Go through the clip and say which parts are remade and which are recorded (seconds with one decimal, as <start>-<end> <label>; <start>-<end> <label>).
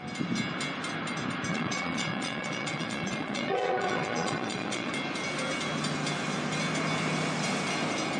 0.0-1.5 recorded; 1.5-4.9 remade; 4.9-8.2 recorded